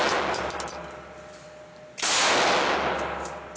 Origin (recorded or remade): recorded